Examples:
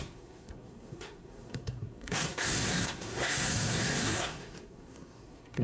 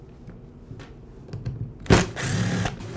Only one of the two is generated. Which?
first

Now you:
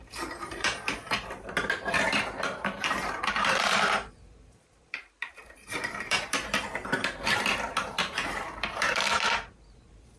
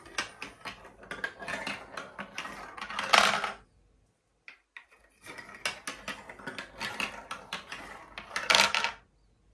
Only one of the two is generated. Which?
first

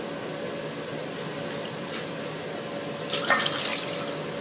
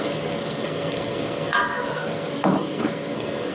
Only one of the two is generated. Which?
second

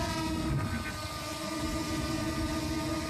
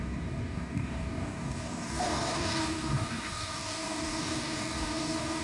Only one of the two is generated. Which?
second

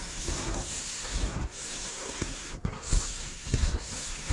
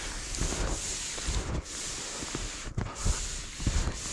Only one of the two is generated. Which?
first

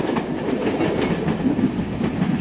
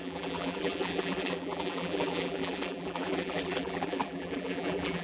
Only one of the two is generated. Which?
second